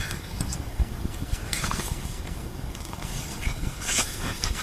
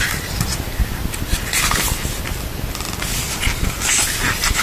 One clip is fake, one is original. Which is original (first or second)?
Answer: second